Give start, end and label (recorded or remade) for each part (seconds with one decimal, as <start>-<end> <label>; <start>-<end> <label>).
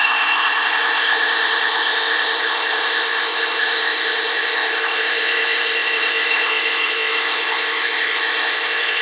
0.0-9.0 remade